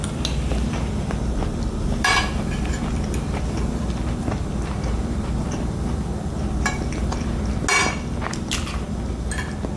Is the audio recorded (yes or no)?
yes